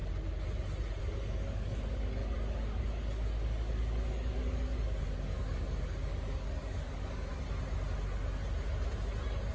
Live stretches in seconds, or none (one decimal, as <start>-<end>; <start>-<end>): 0.0-1.0; 7.3-9.5